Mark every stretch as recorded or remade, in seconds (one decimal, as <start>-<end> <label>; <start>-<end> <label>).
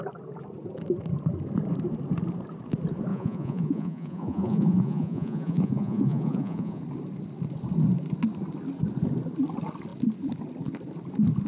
0.0-3.1 recorded; 3.1-6.8 remade; 6.8-11.5 recorded